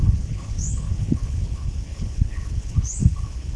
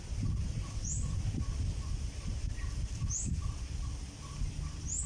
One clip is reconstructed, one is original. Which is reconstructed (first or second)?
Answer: first